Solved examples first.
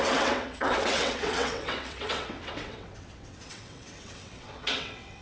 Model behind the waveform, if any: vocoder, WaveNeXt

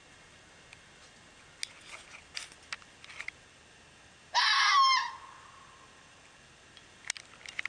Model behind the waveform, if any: none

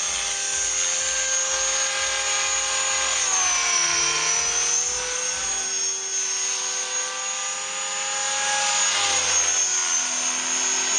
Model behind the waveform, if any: none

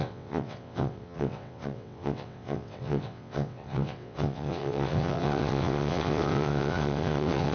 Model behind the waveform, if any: vocoder, WaveNeXt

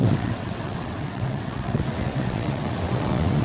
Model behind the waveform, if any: vocoder, WaveNeXt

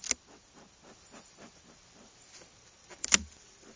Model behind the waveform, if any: none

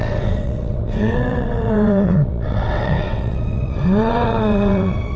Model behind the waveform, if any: vocoder, WaveNeXt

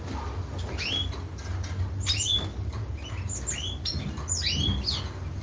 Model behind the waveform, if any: none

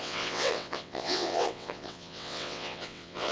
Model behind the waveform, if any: vocoder, WaveNeXt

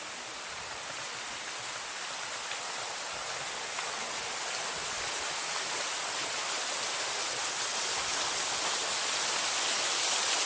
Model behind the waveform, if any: none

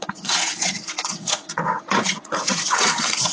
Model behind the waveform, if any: vocoder, WaveNeXt